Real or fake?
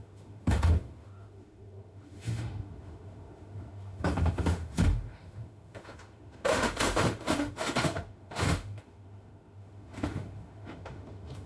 fake